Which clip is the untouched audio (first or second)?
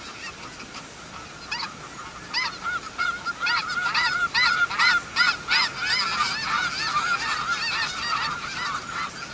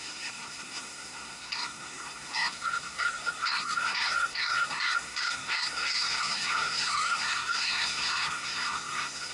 first